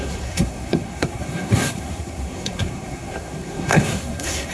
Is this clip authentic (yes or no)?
no